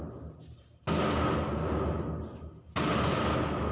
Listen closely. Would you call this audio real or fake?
real